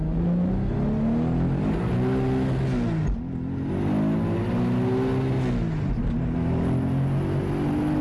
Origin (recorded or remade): recorded